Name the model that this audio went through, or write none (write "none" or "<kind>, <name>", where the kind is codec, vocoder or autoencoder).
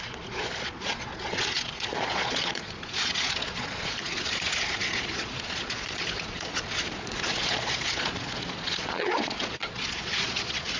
vocoder, Vocos